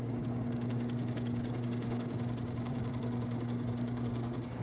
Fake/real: fake